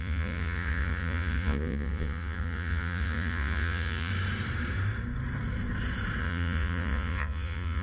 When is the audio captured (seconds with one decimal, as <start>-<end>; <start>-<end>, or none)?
4.1-6.2